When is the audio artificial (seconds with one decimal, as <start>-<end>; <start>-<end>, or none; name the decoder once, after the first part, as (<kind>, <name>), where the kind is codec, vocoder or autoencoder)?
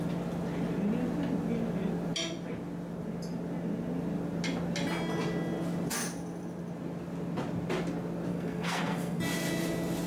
8.3-9.2 (codec, SNAC)